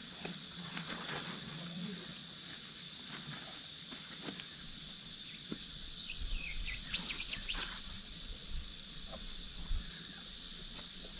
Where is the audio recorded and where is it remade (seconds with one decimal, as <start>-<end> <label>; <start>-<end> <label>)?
0.0-2.2 remade; 2.2-5.6 recorded; 5.6-11.2 remade